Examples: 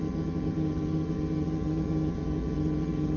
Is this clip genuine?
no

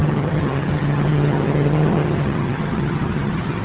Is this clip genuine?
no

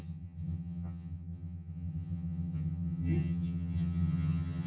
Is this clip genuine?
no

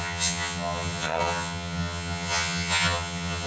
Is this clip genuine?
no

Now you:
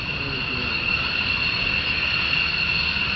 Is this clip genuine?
yes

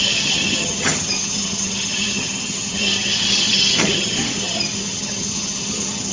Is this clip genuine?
no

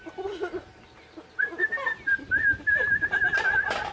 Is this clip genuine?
yes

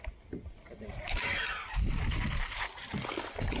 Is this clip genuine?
yes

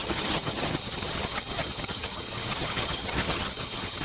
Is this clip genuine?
no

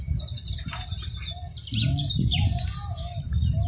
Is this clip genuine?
yes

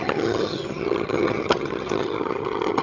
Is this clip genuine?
no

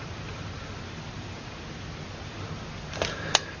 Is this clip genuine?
yes